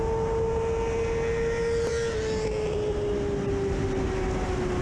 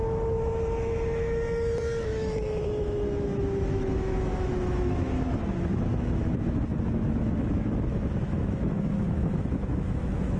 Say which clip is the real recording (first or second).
first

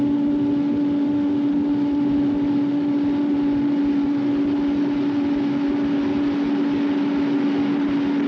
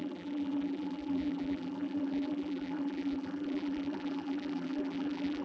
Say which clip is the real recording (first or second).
first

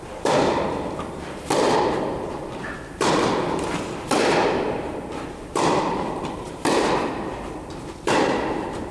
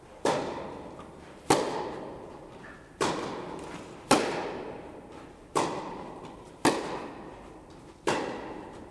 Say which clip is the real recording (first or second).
second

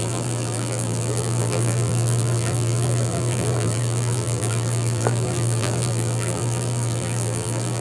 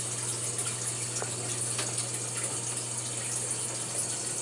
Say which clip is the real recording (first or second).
second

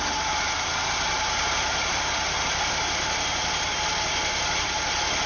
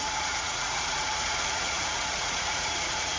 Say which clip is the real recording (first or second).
first